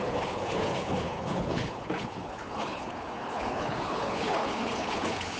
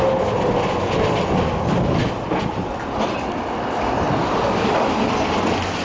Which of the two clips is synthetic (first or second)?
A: first